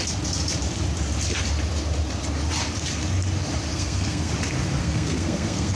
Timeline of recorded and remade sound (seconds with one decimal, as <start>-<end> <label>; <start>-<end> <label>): 0.0-3.7 recorded; 3.7-4.3 remade; 4.3-4.8 recorded; 4.8-5.8 remade